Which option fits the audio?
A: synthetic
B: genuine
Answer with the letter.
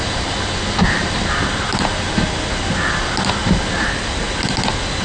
B